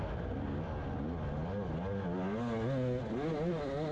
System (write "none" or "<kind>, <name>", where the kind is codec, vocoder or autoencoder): none